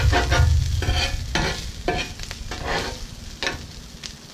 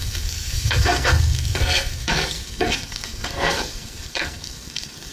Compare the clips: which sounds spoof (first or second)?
second